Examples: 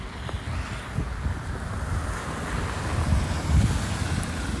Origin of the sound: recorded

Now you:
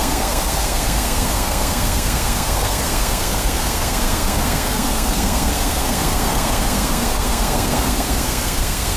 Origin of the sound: remade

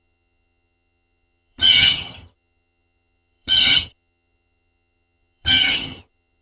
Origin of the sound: remade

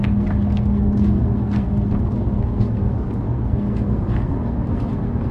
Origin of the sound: remade